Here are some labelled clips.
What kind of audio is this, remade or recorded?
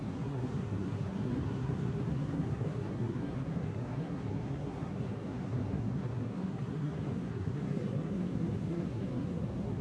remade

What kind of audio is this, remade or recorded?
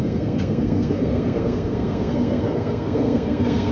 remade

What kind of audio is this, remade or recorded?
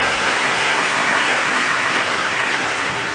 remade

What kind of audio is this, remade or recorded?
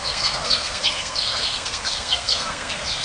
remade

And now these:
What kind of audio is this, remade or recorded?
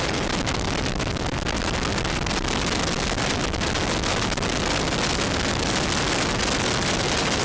recorded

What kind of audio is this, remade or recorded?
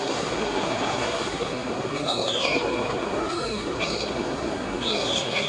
remade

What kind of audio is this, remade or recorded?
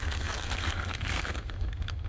remade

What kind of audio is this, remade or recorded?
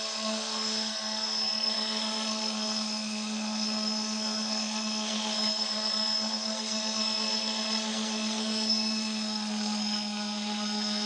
remade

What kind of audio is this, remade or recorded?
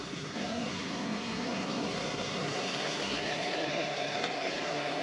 remade